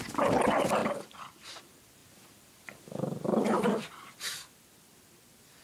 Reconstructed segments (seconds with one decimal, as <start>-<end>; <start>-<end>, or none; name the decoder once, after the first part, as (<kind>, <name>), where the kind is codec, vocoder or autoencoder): 0.8-1.6 (vocoder, BigVGAN v2); 2.0-3.7